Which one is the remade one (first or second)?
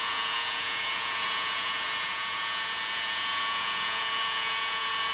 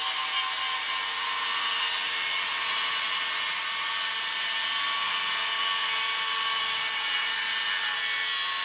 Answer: first